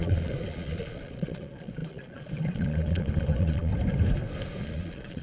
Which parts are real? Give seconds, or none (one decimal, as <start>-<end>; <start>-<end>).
3.7-4.6